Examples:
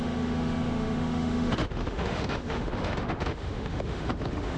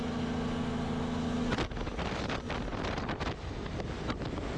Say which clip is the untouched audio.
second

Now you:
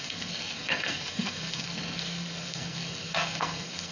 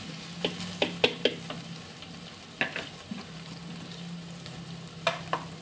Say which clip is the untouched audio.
second